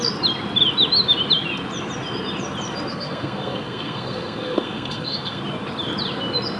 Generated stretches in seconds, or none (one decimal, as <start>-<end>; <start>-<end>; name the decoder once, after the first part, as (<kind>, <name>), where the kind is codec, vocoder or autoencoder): 2.9-5.4 (codec, SNAC)